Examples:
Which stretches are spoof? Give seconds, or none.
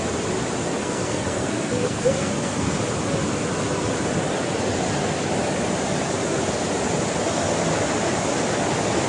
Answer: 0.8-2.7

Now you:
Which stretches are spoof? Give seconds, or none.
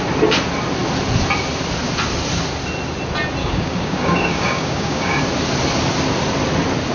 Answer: 3.4-5.2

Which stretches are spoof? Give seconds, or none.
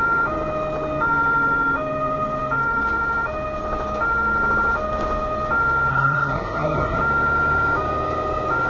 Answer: 5.9-7.0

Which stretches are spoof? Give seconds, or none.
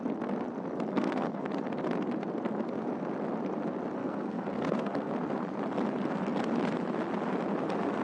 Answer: 0.9-1.5; 4.0-5.1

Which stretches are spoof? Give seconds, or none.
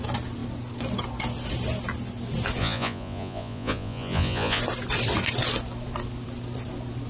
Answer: 2.6-4.6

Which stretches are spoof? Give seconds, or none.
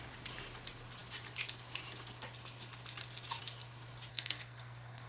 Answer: 4.1-5.1